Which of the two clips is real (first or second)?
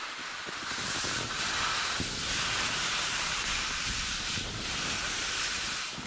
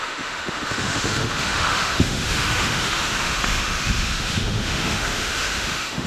first